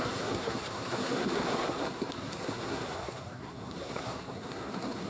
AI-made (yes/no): yes